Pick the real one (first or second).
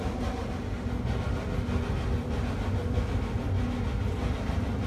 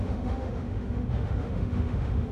first